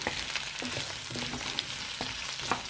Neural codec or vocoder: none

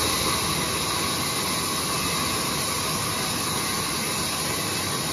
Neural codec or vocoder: none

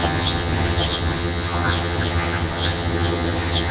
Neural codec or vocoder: vocoder, HiFi-GAN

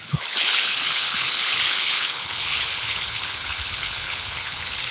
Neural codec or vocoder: codec, HILCodec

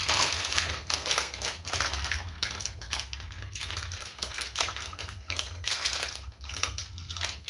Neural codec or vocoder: codec, SNAC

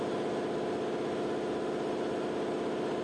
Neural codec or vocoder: none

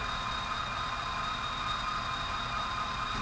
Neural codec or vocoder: none